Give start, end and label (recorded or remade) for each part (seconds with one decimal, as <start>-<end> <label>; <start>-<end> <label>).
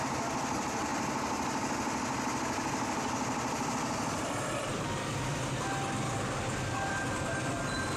0.0-4.6 recorded; 4.6-5.1 remade; 5.1-8.0 recorded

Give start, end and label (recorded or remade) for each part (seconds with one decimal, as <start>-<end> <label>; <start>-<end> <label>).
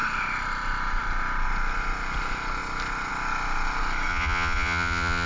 0.0-4.1 recorded; 4.1-5.3 remade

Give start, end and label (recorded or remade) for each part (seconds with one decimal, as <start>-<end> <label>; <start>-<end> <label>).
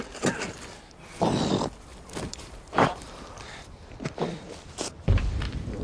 0.0-1.9 recorded; 1.9-5.8 remade